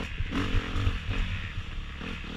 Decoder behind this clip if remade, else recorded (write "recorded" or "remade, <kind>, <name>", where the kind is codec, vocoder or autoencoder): recorded